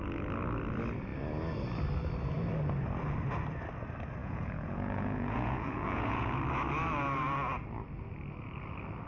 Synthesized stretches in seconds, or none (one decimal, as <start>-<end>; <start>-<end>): 4.2-6.4